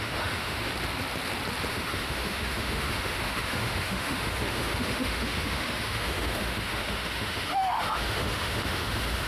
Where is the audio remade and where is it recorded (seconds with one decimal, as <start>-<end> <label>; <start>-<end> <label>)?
0.0-0.7 remade; 0.7-1.7 recorded; 1.7-9.3 remade